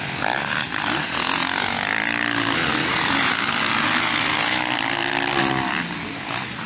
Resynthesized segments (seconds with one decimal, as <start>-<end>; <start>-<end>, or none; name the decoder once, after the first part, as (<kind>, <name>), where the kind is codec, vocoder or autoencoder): none